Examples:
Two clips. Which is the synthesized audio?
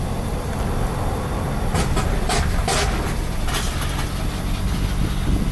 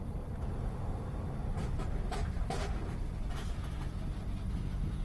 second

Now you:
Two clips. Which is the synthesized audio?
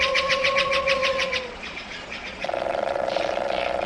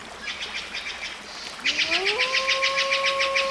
first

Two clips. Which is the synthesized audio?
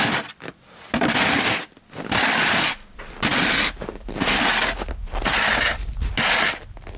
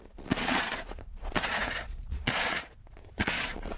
second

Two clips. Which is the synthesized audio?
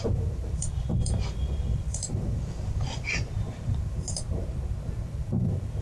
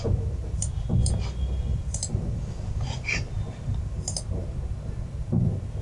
first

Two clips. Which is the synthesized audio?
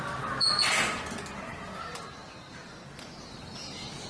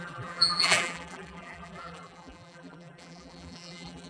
second